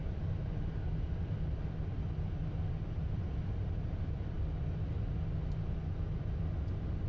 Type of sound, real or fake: real